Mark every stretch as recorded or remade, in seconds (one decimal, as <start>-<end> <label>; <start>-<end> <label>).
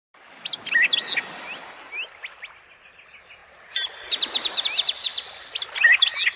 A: 0.0-6.4 recorded